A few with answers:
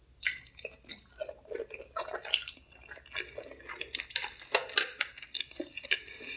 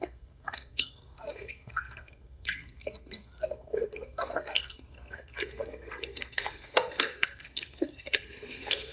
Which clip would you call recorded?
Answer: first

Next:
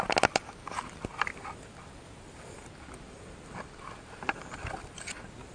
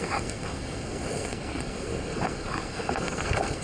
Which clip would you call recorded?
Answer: first